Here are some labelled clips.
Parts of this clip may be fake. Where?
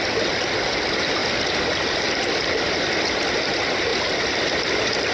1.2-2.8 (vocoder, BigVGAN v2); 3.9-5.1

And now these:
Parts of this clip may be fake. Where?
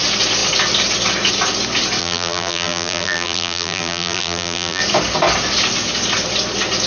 2.0-4.8 (vocoder, BigVGAN v2)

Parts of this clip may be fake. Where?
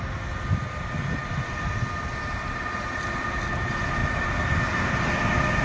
4.0-4.7 (vocoder, BigVGAN v2)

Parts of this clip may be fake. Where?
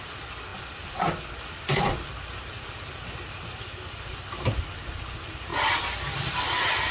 none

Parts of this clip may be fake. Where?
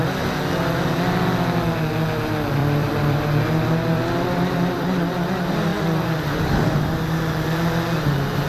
2.6-3.2 (vocoder, BigVGAN v2); 3.9-5.3; 5.7-6.8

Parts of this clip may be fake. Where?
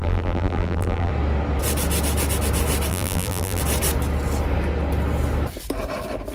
0.0-1.1 (vocoder, BigVGAN v2); 2.9-3.6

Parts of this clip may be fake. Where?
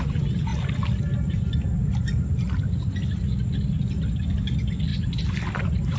none